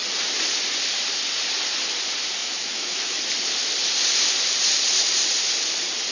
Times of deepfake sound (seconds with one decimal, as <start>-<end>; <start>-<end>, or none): 2.4-3.2